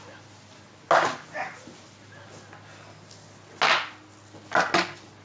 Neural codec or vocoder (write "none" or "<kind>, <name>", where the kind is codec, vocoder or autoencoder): none